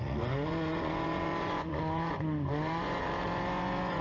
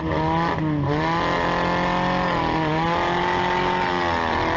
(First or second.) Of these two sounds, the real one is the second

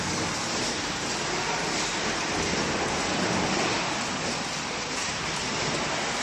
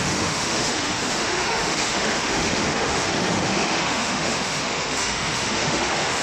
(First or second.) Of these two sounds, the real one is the first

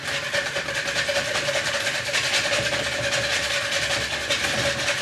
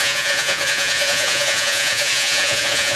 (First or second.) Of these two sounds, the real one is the first